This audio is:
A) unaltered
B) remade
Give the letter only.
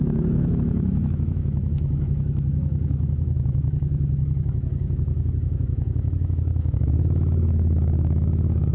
B